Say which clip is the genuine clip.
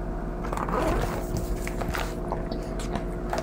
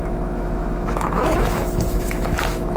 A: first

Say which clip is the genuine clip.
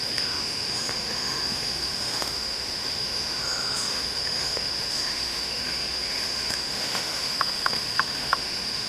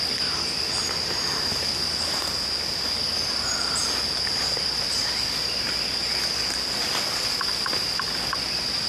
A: second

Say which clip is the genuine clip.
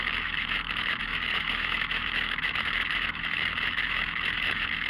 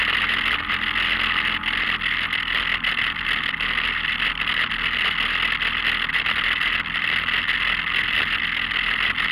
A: second